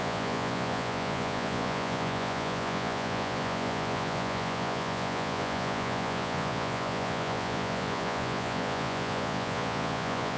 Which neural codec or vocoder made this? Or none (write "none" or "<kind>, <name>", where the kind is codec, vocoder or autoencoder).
vocoder, Vocos